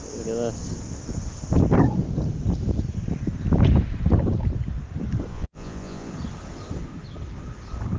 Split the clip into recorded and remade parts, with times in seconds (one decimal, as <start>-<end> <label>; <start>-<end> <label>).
0.0-5.3 recorded; 5.3-6.1 remade; 6.1-8.0 recorded